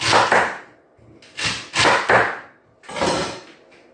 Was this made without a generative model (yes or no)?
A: yes